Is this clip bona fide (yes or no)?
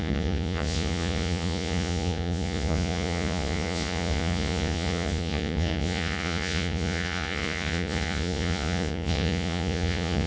no